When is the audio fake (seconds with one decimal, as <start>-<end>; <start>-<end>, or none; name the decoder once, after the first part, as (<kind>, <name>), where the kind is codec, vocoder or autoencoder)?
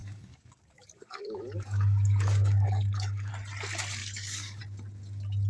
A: 0.0-3.3 (codec, DAC); 4.0-4.6